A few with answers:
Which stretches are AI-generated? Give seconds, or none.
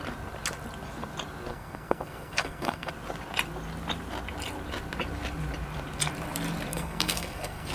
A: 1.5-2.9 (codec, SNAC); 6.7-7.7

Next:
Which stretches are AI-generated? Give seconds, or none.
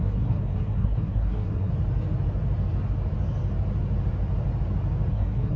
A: 0.0-1.7 (codec, SNAC); 5.1-5.6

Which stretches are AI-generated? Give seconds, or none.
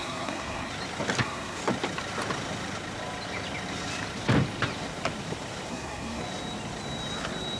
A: 0.0-0.7 (codec, SNAC); 1.2-1.6; 5.7-6.2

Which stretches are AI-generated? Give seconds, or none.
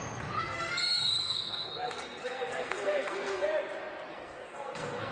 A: 0.4-3.5 (codec, SNAC); 4.1-5.1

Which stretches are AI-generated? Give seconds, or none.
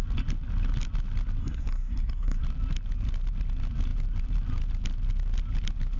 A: 1.4-2.4 (codec, SNAC)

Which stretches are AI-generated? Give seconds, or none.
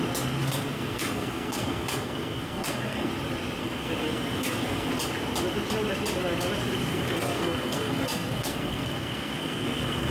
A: 0.4-3.1 (codec, SNAC); 3.6-4.9; 6.9-10.1